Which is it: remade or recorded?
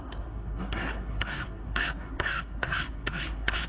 remade